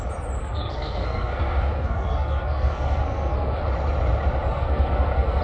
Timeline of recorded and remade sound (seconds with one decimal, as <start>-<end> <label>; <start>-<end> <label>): 0.0-0.4 recorded; 0.4-3.6 remade; 3.6-4.5 recorded; 4.5-5.4 remade